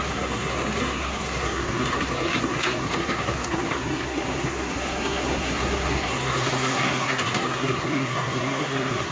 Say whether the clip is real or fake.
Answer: fake